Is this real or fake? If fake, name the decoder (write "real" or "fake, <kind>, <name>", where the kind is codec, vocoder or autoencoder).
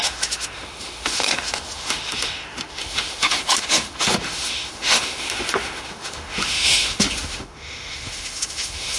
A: fake, autoencoder, DAC-VAE